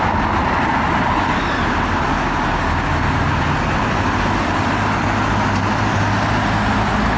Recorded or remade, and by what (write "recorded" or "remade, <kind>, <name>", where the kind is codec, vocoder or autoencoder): recorded